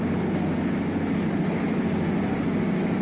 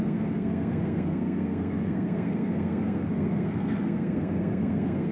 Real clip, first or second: first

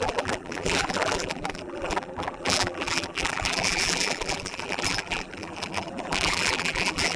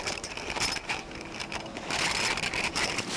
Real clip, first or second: second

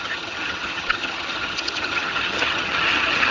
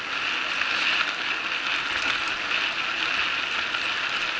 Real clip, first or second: second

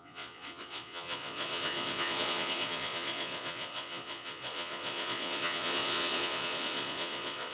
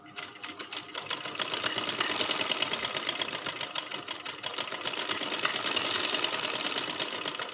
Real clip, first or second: second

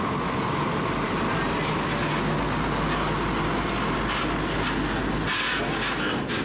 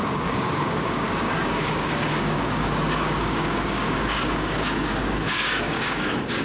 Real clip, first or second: first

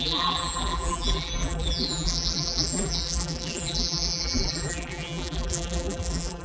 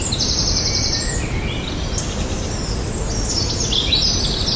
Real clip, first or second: second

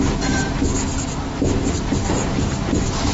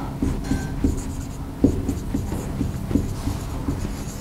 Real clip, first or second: second